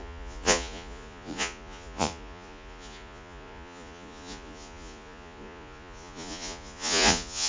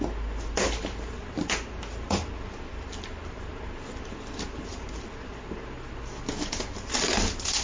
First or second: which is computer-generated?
first